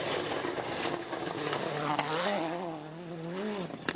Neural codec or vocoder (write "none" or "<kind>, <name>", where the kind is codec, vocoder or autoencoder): none